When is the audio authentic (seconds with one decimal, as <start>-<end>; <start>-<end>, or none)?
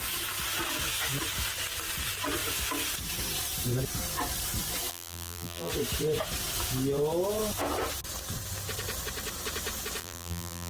0.0-4.9; 5.7-10.0